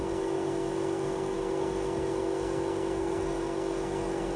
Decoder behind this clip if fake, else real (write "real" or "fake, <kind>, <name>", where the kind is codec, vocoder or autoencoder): fake, codec, SNAC